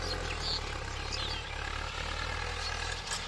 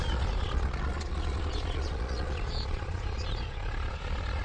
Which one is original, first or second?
first